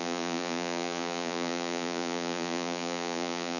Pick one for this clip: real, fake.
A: fake